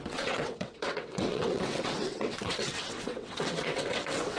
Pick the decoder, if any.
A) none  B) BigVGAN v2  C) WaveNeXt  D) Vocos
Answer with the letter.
C